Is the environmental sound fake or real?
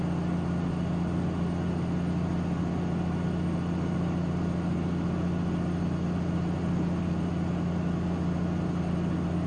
real